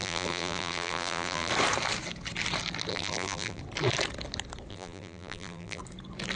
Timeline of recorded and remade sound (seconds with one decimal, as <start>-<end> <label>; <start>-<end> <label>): 0.0-1.5 remade; 1.5-2.9 recorded; 2.9-3.6 remade; 3.6-4.7 recorded; 4.7-5.8 remade; 5.8-6.4 recorded